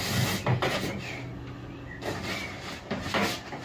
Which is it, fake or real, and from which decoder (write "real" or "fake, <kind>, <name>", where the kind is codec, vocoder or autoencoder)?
real